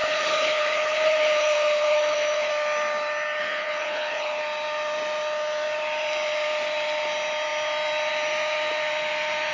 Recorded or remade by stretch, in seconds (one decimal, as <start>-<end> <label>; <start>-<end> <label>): 0.0-2.5 remade; 2.5-3.4 recorded; 3.4-4.4 remade; 4.4-9.5 recorded